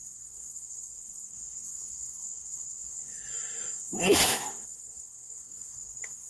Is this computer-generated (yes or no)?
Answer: yes